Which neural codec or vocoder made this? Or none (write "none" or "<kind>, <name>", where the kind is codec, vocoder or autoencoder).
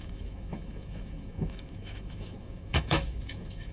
autoencoder, DAC-VAE